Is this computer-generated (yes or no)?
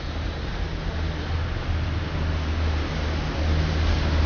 no